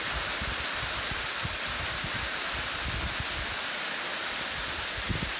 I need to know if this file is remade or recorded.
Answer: remade